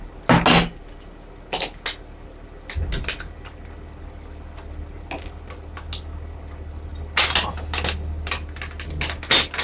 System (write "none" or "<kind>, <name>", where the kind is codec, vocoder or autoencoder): none